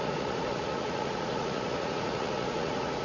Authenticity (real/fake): fake